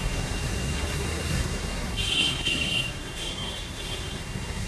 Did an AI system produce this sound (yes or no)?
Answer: yes